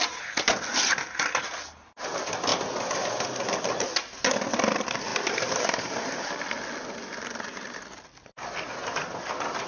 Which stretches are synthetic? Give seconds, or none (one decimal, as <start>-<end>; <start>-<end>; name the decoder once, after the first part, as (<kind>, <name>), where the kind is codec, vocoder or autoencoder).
5.1-6.3 (vocoder, BigVGAN v2); 7.1-7.8